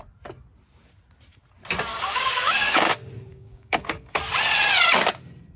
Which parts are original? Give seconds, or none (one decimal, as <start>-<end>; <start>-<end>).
0.0-1.9; 2.9-3.3; 4.2-5.6